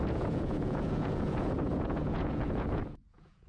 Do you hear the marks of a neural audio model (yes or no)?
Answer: yes